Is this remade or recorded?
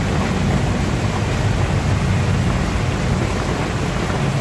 recorded